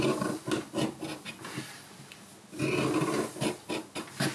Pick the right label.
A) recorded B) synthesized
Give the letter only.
A